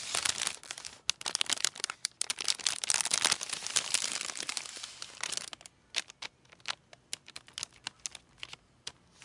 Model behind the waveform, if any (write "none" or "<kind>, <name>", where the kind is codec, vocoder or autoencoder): none